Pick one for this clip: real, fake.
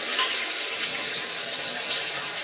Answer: real